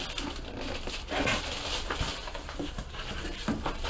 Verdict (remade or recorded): recorded